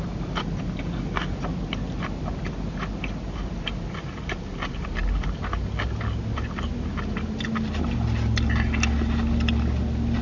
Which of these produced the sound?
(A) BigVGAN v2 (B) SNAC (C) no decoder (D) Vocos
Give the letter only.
C